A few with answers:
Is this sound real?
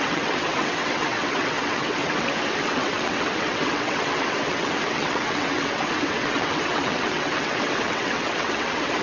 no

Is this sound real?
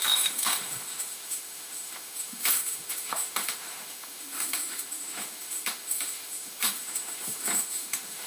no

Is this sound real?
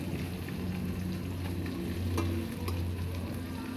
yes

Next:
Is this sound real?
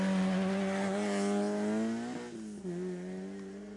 yes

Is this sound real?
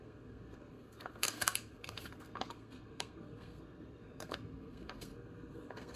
no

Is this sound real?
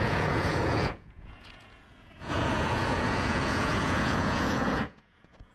no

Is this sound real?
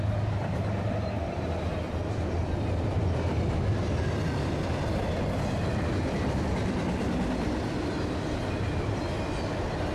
yes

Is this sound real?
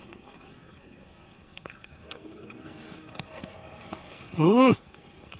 no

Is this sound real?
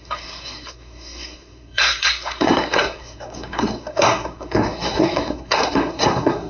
no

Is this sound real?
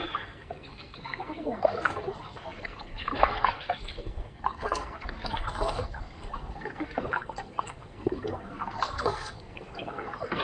no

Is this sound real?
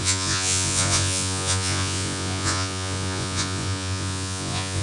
no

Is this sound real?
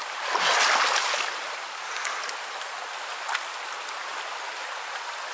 yes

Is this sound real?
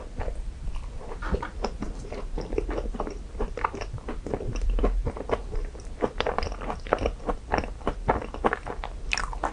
no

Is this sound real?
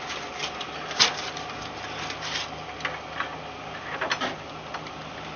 yes